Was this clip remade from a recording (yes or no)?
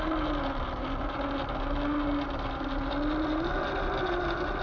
no